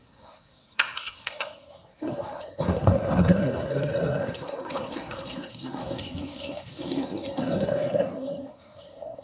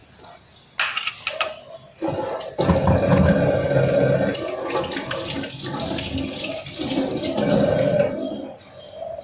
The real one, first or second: second